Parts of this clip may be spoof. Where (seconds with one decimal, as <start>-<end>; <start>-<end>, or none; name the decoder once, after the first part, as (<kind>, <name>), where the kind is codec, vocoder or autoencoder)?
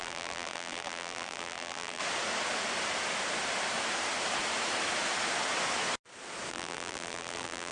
0.0-2.0 (vocoder, BigVGAN v2); 6.5-7.7